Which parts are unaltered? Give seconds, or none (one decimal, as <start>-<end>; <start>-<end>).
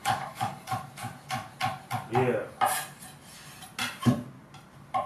0.7-5.1